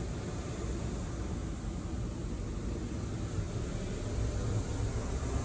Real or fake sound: real